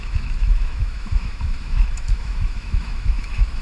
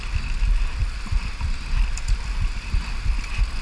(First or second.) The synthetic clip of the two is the first